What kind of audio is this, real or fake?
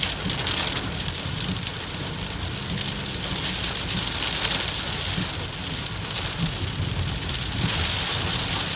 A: real